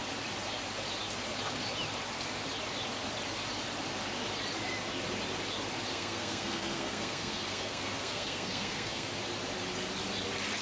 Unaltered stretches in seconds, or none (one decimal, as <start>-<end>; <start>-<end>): 0.0-5.9; 9.1-10.6